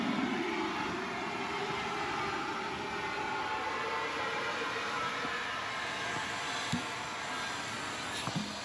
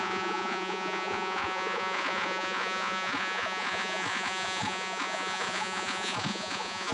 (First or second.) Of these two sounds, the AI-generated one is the second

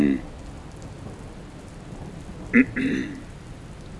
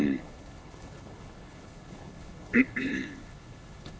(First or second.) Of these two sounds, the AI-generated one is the second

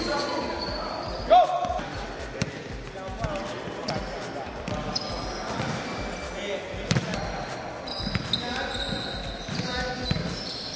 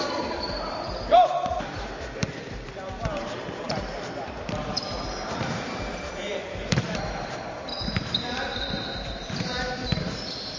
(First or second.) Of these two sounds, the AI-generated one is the second